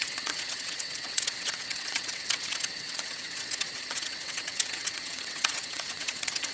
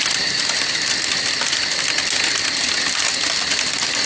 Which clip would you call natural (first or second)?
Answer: second